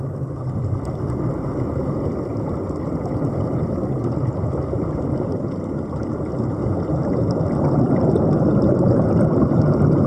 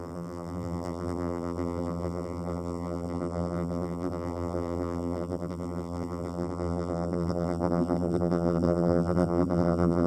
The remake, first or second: second